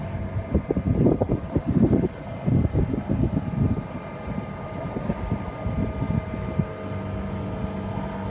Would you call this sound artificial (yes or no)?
no